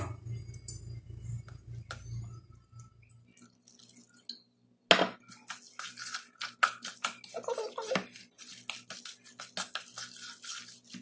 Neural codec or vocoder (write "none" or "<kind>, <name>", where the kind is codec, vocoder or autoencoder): none